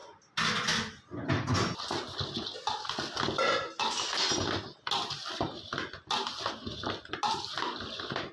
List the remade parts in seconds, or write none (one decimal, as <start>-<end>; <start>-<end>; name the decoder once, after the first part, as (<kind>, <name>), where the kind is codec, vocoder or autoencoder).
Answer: none